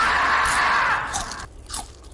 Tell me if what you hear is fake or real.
real